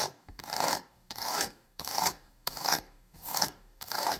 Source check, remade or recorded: remade